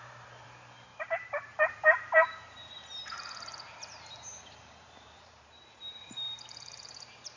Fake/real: fake